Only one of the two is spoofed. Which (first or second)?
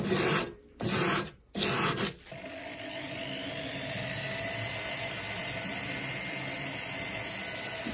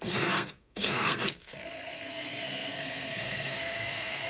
second